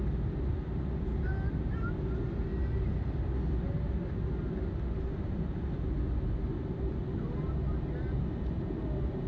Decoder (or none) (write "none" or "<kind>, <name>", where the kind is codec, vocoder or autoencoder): none